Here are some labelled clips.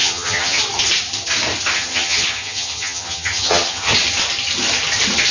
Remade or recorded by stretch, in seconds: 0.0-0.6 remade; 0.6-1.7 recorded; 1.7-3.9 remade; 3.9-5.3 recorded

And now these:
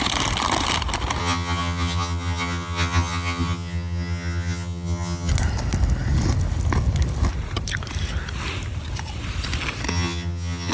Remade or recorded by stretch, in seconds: 0.0-1.2 recorded; 1.2-5.3 remade; 5.3-9.9 recorded; 9.9-10.7 remade